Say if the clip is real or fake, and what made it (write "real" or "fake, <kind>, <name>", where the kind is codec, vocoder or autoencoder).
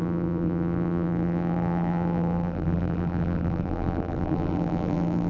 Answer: fake, vocoder, BigVGAN v2